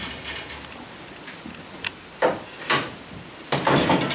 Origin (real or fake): real